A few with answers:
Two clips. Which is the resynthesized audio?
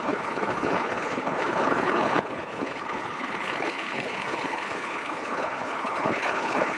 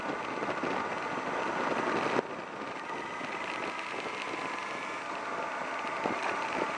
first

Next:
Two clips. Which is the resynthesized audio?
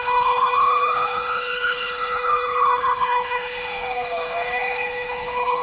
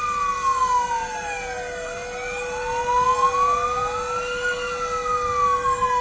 first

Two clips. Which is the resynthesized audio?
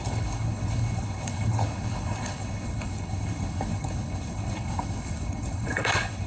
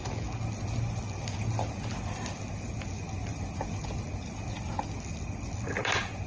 first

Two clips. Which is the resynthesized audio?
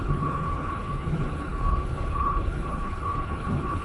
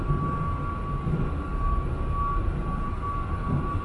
first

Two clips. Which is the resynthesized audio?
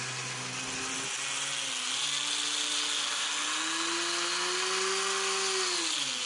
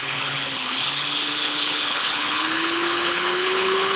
second